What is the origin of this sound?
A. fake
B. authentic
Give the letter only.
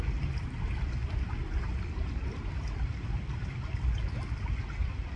B